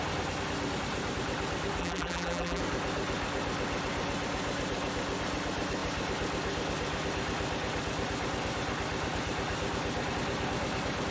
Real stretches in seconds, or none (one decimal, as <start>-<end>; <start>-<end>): 0.0-1.8; 2.6-11.1